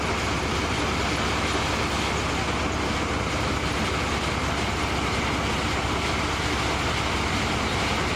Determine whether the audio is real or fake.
real